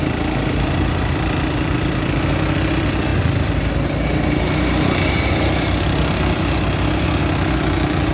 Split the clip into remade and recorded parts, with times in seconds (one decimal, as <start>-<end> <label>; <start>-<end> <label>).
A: 0.0-8.1 recorded